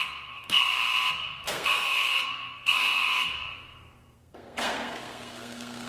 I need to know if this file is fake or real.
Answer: fake